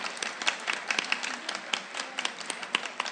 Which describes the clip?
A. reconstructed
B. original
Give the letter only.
B